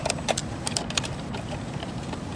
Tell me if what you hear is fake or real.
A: real